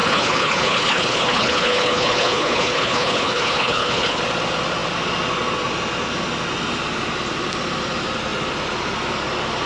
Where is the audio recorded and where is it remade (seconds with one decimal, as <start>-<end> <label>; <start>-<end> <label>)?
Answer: 0.0-4.2 remade; 4.2-9.7 recorded